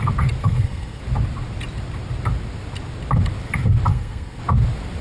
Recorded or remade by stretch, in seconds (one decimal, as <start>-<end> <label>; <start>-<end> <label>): 0.0-0.4 recorded; 0.4-1.0 remade; 1.0-3.9 recorded; 3.9-4.4 remade; 4.4-5.0 recorded